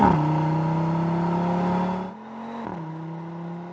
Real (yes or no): yes